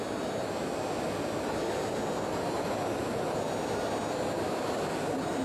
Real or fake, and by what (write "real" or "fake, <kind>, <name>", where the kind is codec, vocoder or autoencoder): real